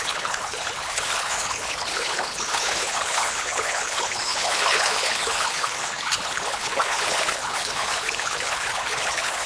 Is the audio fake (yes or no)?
yes